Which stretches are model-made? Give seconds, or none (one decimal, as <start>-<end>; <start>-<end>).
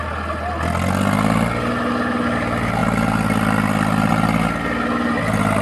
none